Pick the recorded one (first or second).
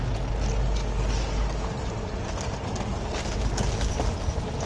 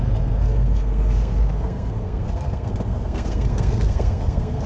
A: first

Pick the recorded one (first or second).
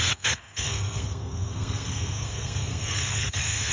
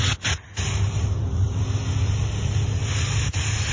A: second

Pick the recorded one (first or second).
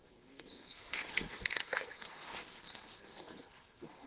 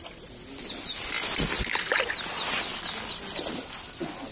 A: second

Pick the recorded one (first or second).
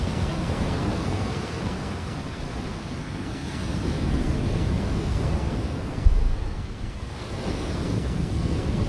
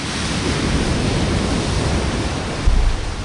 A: second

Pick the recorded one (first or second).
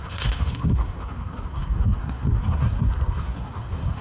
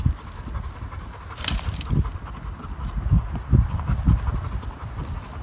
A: second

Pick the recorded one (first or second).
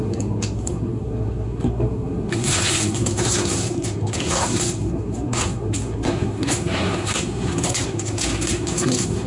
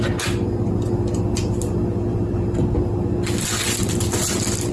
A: second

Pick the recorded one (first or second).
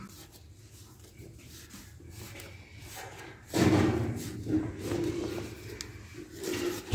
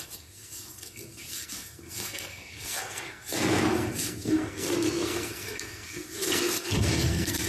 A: first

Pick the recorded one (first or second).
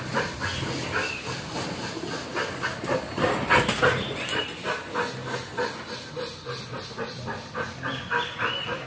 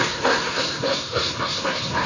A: first